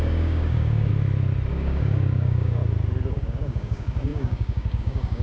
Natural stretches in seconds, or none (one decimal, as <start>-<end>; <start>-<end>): 0.9-1.5; 2.6-3.1